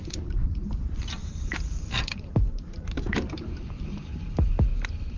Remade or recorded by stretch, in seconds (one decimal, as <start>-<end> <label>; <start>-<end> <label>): 0.0-4.7 remade; 4.7-5.2 recorded